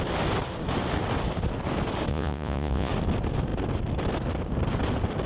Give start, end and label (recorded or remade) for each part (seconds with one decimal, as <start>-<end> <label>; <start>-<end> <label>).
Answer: 0.0-2.1 recorded; 2.1-2.9 remade; 2.9-5.3 recorded